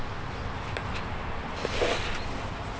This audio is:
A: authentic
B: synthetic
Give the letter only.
A